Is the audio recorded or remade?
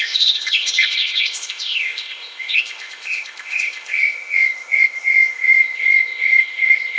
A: remade